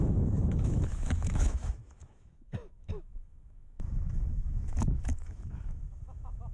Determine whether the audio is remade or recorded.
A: remade